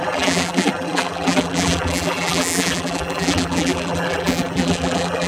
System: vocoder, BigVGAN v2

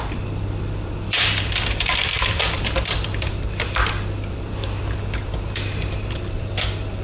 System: vocoder, BigVGAN v2